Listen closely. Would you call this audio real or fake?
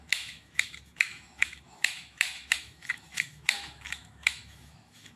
fake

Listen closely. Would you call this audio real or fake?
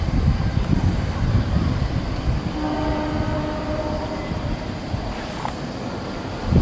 real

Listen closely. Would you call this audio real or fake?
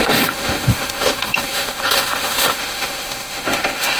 fake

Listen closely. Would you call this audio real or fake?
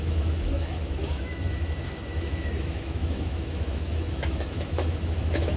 fake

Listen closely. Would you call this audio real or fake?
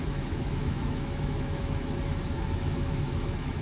fake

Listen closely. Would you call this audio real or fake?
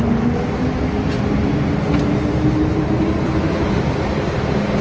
real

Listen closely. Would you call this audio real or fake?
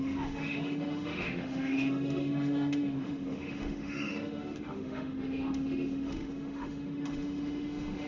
fake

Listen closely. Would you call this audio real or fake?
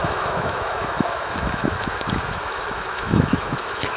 fake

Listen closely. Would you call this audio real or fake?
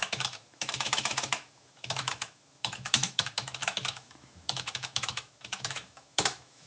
fake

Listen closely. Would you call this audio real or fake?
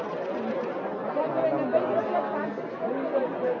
real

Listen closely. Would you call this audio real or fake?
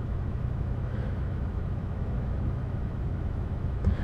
fake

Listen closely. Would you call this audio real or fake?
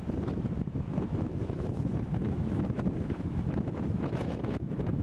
fake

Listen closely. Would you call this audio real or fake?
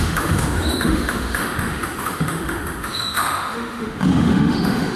fake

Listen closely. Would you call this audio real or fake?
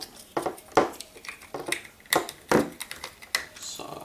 real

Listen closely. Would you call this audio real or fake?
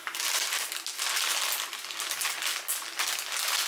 real